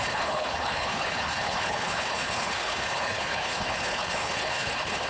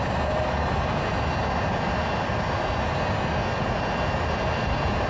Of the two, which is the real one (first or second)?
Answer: second